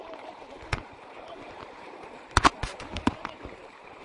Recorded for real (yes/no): no